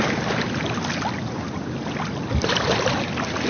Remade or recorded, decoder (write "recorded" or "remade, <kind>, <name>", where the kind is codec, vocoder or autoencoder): recorded